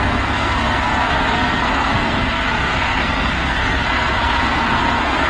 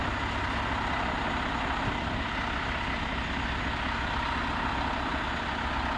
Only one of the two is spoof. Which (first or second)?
first